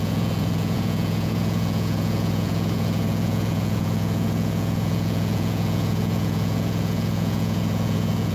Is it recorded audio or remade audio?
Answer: remade